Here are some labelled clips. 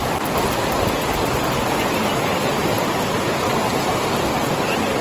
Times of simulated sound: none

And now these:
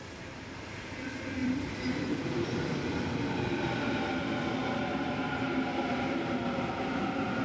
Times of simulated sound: 1.4-4.1 (vocoder, BigVGAN v2); 4.6-5.4

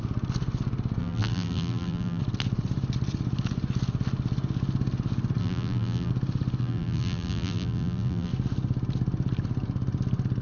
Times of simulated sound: 1.0-2.2 (vocoder, BigVGAN v2); 5.4-6.1; 6.6-8.3

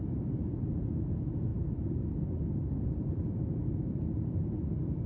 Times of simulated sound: 1.5-4.6 (vocoder, BigVGAN v2)